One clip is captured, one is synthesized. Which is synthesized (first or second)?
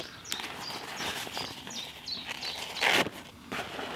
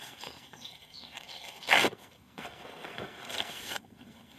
second